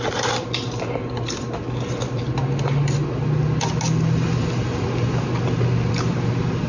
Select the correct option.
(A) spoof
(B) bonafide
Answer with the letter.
B